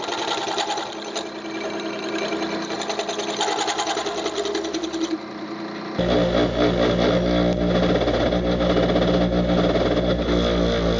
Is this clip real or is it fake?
real